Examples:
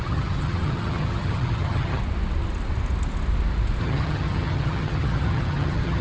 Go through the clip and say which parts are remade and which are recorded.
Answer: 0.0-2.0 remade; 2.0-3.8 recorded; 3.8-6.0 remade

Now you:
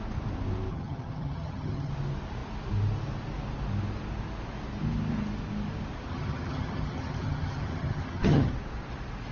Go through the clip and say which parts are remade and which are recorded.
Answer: 0.0-0.7 recorded; 0.7-1.9 remade; 1.9-6.1 recorded; 6.1-8.5 remade; 8.5-9.3 recorded

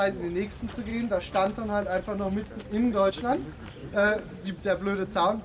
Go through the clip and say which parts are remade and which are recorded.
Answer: 0.0-3.8 recorded; 3.8-4.6 remade; 4.6-5.4 recorded

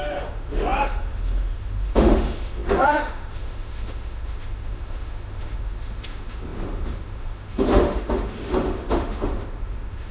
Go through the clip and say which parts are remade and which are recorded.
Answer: 0.0-10.1 remade